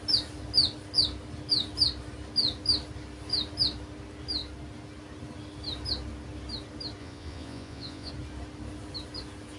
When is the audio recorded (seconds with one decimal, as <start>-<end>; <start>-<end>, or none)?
0.0-7.0; 8.1-9.6